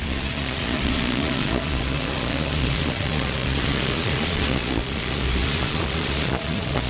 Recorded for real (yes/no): no